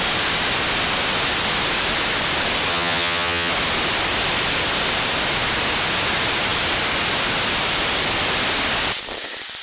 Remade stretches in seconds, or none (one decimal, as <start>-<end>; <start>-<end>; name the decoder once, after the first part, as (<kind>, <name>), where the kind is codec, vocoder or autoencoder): 2.7-3.5 (vocoder, HiFi-GAN)